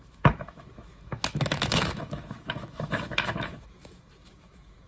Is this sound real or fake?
fake